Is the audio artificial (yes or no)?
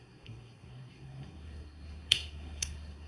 yes